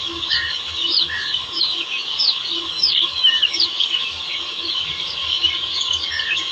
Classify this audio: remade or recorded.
remade